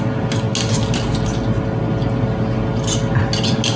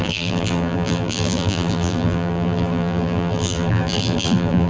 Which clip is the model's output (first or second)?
second